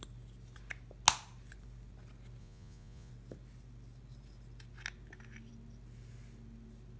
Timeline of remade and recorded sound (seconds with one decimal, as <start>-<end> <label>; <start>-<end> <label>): 0.0-2.4 recorded; 2.4-3.1 remade; 3.1-7.0 recorded